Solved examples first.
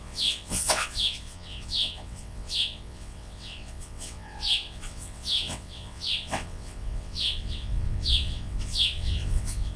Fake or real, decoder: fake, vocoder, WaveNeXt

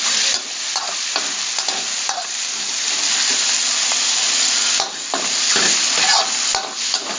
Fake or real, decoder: real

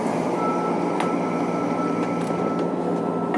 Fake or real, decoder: fake, vocoder, BigVGAN v2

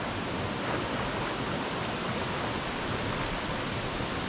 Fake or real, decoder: real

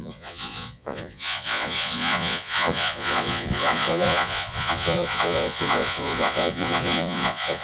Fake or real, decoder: fake, vocoder, Vocos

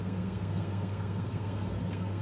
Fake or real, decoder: fake, codec, SNAC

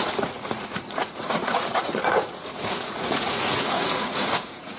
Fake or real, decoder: fake, vocoder, Vocos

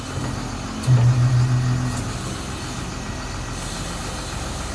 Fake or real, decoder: real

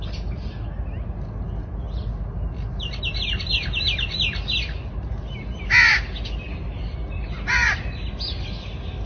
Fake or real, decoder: real